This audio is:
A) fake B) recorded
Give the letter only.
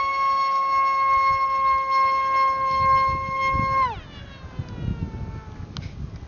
B